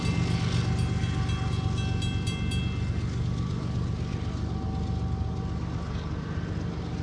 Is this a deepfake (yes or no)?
no